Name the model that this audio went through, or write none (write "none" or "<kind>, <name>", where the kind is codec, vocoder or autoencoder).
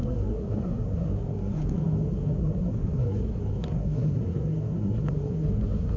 codec, SNAC